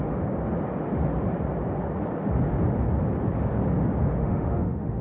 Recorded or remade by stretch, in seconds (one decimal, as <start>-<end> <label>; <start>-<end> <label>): 0.0-4.2 recorded; 4.2-5.0 remade